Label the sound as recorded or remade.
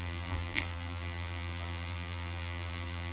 remade